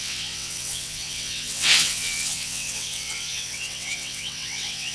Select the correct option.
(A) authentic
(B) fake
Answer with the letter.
B